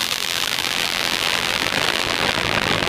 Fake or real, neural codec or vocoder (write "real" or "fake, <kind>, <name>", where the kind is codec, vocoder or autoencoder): fake, vocoder, BigVGAN v2